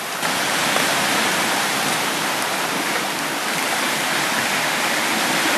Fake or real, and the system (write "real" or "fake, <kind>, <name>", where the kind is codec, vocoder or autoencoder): real